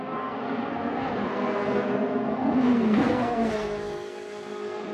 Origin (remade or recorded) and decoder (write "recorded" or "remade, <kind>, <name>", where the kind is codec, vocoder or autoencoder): remade, codec, SNAC